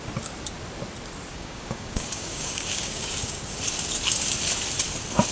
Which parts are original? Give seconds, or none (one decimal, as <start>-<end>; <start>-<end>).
0.0-1.3; 3.6-5.3